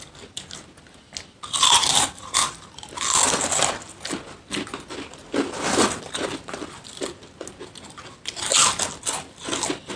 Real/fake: real